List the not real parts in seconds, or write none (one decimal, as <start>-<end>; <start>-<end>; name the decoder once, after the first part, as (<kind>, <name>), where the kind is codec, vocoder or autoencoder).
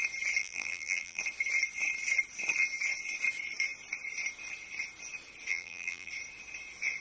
0.4-1.2 (vocoder, BigVGAN v2); 5.5-6.1